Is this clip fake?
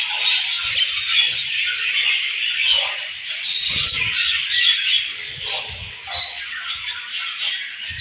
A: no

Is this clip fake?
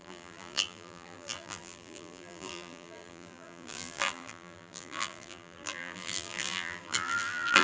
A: yes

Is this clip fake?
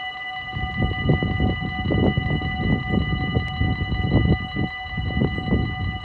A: no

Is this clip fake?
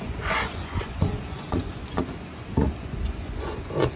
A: yes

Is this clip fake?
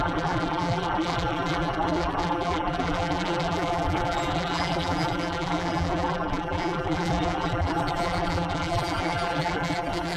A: yes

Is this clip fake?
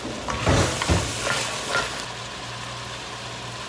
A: no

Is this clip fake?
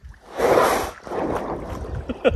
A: no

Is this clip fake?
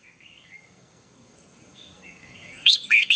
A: yes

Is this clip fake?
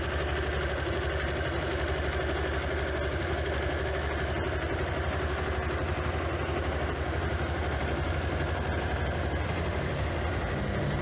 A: no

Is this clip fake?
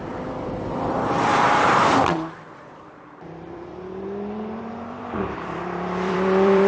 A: yes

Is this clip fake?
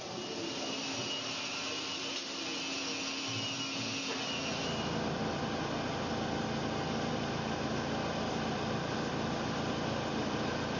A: no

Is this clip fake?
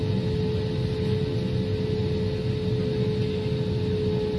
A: no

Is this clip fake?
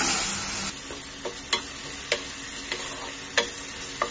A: no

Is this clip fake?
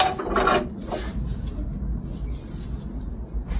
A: no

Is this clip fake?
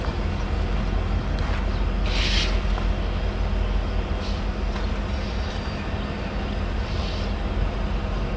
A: no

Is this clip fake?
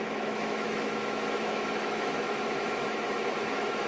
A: yes